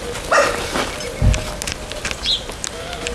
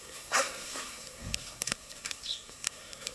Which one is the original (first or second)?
first